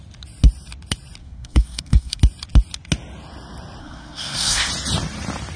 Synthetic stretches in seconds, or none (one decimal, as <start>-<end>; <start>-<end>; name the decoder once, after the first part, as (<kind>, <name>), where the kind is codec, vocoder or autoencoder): 1.2-2.2 (codec, SNAC); 3.8-4.7